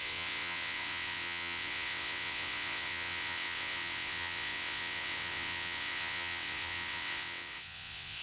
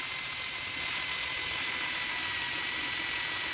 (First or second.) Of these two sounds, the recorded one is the second